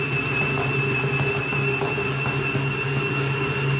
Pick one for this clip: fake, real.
real